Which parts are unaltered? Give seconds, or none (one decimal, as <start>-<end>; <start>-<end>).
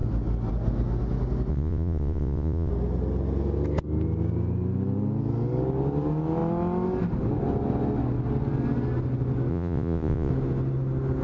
0.0-1.5; 2.7-9.5; 10.3-11.2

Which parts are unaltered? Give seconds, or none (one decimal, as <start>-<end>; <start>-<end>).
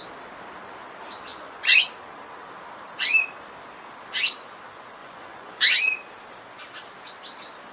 0.0-1.3; 1.9-5.0; 5.6-7.7